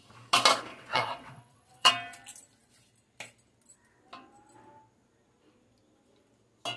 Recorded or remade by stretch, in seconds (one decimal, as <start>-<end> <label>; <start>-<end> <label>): 0.0-0.7 recorded; 0.7-1.9 remade; 1.9-6.8 recorded